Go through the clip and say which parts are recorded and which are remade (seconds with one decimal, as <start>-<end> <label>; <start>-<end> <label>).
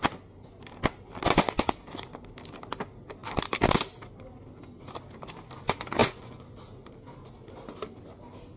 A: 0.0-6.0 recorded; 6.0-6.5 remade; 6.5-8.6 recorded